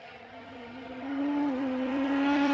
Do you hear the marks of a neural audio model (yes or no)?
yes